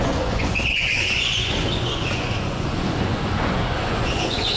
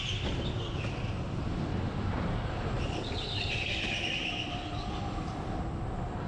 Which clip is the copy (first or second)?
first